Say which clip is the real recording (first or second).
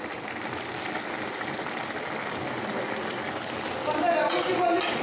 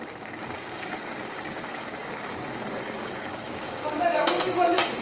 first